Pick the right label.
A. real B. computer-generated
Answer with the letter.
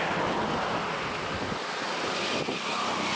A